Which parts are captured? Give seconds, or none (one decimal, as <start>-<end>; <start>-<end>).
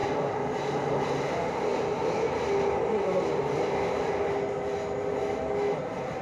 0.0-6.2